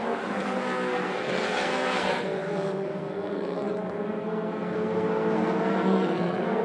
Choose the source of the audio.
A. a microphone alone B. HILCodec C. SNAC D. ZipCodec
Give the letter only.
C